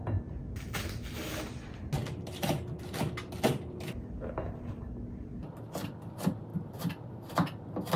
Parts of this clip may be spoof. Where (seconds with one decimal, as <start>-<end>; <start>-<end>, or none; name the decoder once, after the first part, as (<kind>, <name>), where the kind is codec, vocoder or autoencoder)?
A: none